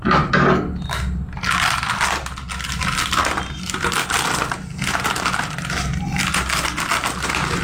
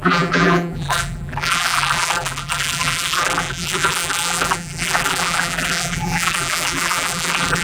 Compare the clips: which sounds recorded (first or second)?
first